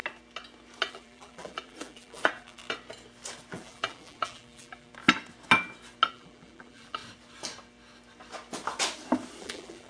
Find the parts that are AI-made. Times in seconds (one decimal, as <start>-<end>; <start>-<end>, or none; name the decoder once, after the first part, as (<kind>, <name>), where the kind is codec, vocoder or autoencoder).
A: 0.9-2.6 (vocoder, BigVGAN v2); 3.5-4.9; 6.1-7.0; 9.4-9.9